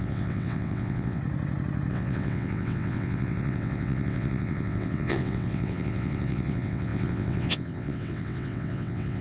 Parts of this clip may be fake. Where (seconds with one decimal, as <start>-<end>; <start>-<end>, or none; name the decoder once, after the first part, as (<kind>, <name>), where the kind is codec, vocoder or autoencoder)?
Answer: 0.0-1.2 (vocoder, WaveNeXt); 1.9-9.2